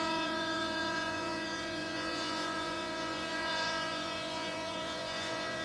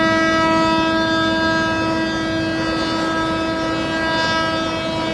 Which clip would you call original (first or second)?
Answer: second